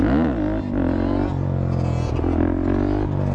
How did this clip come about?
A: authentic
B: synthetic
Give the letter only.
A